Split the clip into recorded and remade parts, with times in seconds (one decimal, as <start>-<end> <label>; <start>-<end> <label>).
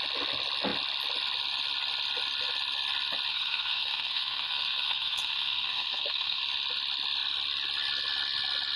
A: 0.0-3.3 recorded; 3.3-6.4 remade; 6.4-8.8 recorded